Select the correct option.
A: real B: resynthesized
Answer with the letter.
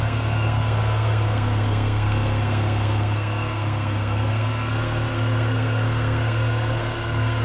B